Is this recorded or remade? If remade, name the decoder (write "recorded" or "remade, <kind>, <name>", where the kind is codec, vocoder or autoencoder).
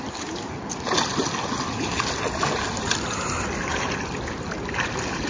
recorded